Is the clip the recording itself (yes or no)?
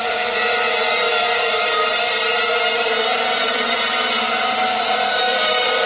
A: no